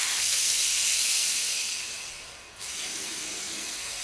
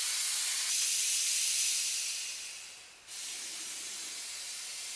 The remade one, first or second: first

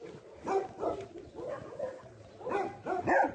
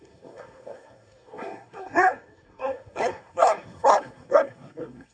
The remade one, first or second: second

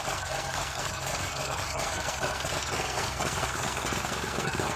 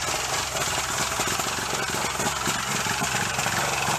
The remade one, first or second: first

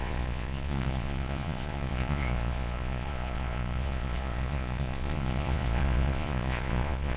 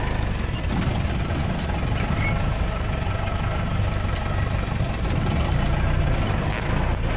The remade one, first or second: first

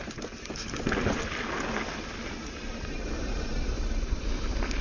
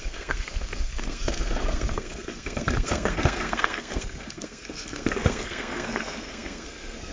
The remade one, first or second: second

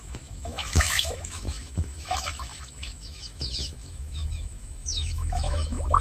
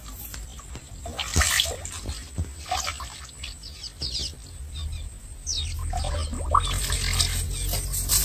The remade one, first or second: first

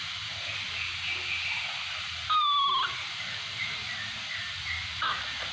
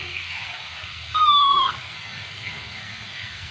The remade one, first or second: second